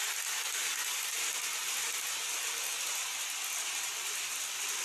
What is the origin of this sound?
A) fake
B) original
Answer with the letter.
B